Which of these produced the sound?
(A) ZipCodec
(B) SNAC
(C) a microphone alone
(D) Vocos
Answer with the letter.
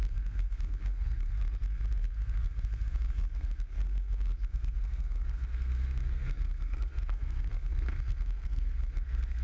B